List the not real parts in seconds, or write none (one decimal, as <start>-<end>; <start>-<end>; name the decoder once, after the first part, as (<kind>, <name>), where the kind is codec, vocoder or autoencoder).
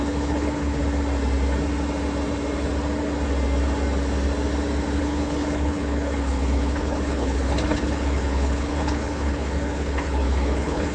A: 0.0-0.8 (codec, HILCodec); 5.0-10.9